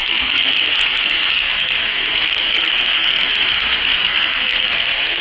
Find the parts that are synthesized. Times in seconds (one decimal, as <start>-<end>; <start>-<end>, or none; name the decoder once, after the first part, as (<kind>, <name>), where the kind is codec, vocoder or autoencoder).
0.0-5.2 (codec, SNAC)